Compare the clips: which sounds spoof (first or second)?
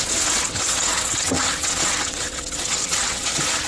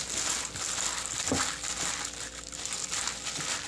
first